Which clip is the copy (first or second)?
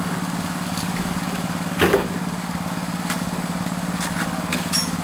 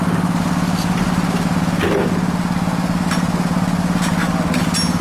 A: first